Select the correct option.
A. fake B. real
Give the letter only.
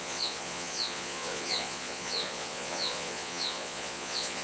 A